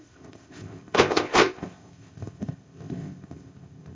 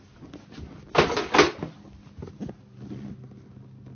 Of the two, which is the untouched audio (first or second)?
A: second